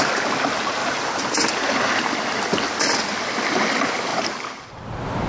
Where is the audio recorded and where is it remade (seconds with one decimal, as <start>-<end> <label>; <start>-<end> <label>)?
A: 0.0-0.8 recorded; 0.8-1.5 remade; 1.5-4.1 recorded; 4.1-4.7 remade; 4.7-5.3 recorded

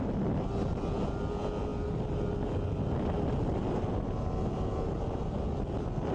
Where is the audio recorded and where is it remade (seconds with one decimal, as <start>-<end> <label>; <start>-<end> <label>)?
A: 0.0-6.1 recorded

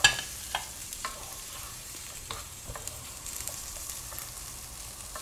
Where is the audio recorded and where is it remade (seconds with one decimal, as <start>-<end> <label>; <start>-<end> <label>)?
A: 0.0-0.8 recorded; 0.8-3.9 remade; 3.9-5.2 recorded

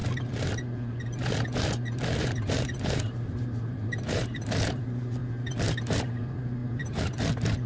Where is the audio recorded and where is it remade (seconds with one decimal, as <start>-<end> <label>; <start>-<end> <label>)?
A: 0.0-2.2 recorded; 2.2-5.2 remade; 5.2-6.0 recorded; 6.0-7.7 remade

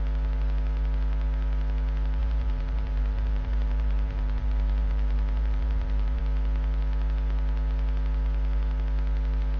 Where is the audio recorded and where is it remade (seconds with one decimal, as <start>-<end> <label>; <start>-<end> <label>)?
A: 0.0-2.2 recorded; 2.2-6.2 remade; 6.2-9.6 recorded